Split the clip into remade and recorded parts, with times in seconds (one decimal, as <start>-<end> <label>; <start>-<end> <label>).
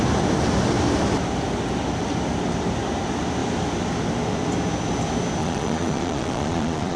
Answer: 0.0-5.4 recorded; 5.4-7.0 remade